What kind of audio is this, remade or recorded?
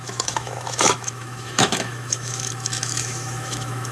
remade